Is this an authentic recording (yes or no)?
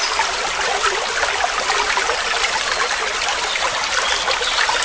yes